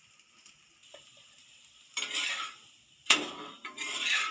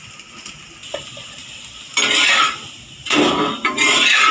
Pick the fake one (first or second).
first